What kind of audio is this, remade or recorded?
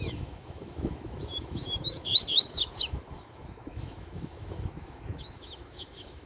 remade